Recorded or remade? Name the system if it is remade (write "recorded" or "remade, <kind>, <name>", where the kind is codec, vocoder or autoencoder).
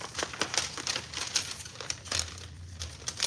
recorded